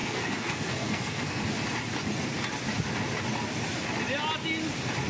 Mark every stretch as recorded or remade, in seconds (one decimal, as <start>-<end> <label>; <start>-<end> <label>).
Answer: 0.0-1.4 remade; 1.4-5.1 recorded